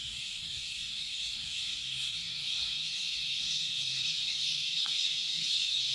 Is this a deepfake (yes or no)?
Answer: yes